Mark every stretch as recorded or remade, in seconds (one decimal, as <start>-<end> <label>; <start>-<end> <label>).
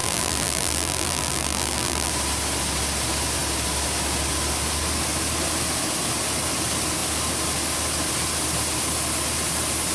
0.0-2.1 remade; 2.1-9.9 recorded